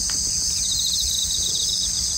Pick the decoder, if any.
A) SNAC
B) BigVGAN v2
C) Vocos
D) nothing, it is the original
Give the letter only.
D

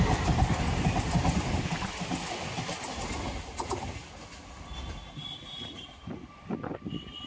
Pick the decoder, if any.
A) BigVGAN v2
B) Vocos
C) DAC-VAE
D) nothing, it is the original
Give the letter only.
D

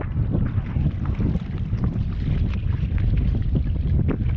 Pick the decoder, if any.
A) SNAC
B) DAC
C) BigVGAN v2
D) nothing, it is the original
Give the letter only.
D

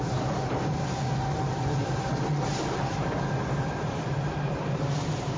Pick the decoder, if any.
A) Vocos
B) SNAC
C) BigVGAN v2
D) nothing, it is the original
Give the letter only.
C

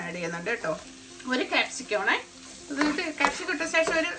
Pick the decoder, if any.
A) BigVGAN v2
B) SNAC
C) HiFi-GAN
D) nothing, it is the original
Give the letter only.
D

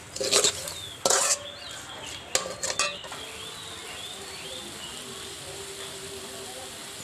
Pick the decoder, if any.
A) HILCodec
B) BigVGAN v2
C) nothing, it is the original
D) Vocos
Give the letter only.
C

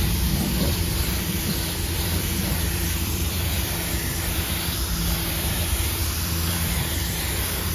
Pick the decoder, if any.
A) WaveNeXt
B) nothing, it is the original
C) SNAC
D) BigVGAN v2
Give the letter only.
D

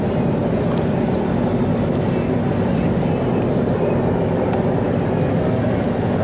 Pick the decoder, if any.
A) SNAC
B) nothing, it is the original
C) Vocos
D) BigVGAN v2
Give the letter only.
B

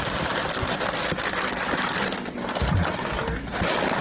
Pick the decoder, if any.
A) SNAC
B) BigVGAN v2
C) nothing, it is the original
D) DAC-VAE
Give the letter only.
C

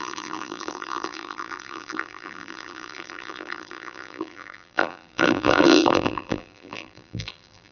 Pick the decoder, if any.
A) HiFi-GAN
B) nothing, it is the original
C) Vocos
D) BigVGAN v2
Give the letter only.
D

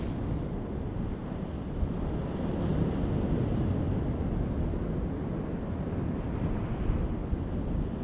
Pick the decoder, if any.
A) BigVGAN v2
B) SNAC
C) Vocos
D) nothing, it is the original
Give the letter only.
D